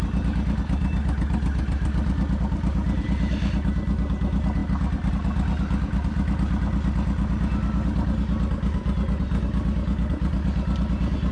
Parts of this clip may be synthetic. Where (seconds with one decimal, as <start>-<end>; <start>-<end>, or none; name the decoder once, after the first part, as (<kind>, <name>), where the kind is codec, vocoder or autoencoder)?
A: none